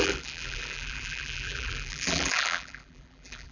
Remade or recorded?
remade